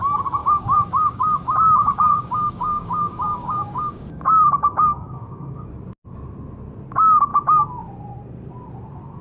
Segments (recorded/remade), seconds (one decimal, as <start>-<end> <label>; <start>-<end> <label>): 0.0-0.4 recorded; 0.4-5.7 remade; 5.7-9.2 recorded